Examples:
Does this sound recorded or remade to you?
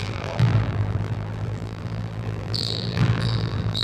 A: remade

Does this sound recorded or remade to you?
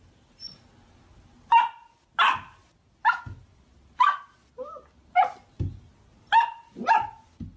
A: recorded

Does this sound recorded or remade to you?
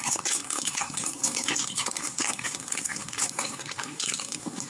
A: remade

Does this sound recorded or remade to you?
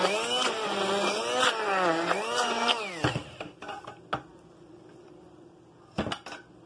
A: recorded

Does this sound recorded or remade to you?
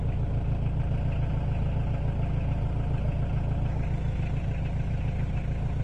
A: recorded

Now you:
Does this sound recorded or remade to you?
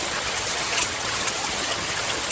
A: remade